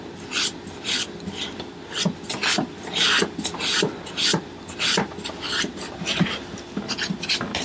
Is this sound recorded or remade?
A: recorded